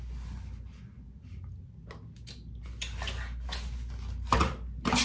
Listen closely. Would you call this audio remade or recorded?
recorded